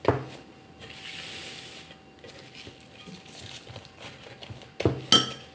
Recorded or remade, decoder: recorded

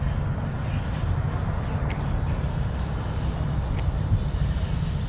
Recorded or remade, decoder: recorded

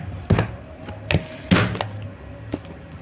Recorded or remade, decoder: recorded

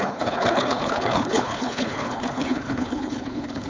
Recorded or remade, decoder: remade, codec, HILCodec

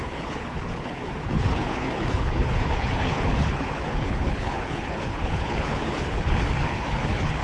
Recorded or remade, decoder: remade, codec, HILCodec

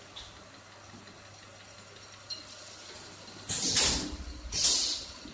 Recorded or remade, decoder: recorded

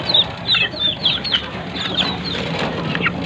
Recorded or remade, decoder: recorded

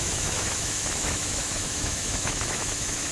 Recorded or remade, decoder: remade, autoencoder, DAC-VAE